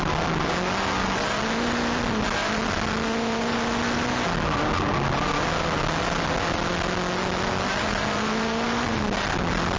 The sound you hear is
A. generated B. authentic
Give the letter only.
B